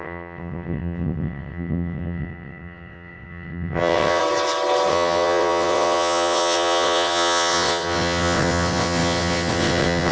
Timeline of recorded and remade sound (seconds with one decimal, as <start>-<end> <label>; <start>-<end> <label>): 0.0-4.2 remade; 4.2-4.9 recorded; 4.9-10.1 remade